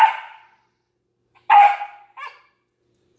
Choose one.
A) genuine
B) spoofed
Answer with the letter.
A